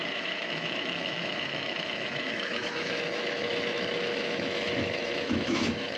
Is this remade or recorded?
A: remade